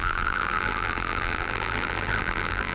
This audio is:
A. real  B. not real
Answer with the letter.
B